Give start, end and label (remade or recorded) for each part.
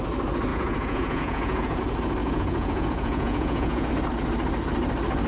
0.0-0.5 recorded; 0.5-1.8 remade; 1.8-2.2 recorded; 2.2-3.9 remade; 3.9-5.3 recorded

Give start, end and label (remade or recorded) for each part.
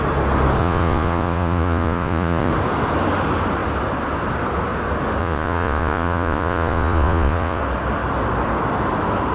0.0-0.6 recorded; 0.6-2.5 remade; 2.5-5.2 recorded; 5.2-7.6 remade; 7.6-9.3 recorded